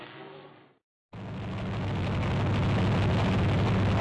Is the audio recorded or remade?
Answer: recorded